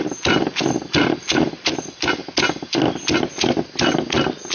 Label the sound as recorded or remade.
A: recorded